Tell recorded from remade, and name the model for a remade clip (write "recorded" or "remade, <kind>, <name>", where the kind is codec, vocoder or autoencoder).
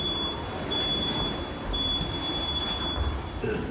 recorded